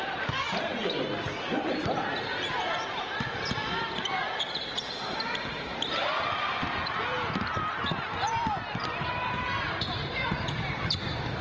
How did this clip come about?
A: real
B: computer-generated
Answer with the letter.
B